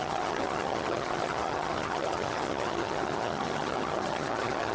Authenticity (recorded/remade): remade